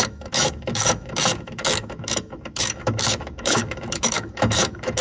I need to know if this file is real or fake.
fake